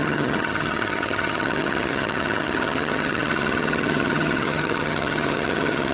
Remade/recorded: remade